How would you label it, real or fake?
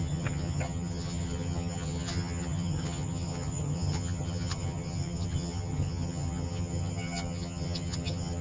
fake